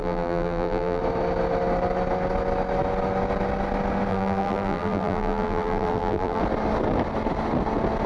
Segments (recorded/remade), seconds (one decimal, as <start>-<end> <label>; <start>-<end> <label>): 0.0-1.0 remade; 1.0-4.1 recorded; 4.1-6.4 remade; 6.4-8.1 recorded